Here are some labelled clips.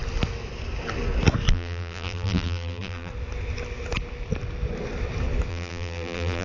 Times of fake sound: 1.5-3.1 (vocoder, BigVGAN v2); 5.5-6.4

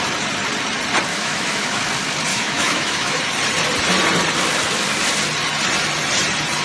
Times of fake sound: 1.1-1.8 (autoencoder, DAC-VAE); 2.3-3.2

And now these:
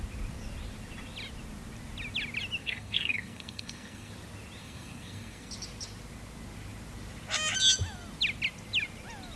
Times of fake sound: 2.6-4.1 (codec, SNAC); 4.6-5.5